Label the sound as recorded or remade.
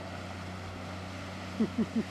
recorded